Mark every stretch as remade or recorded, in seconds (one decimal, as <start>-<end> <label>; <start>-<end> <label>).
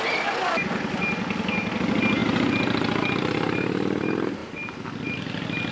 0.0-2.2 recorded; 2.2-4.0 remade; 4.0-4.4 recorded; 4.4-5.2 remade; 5.2-5.7 recorded